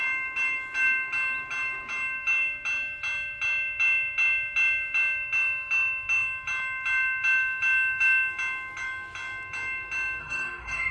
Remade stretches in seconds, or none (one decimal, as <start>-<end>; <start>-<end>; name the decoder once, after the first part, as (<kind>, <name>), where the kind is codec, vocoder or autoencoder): 10.2-10.9 (autoencoder, DAC-VAE)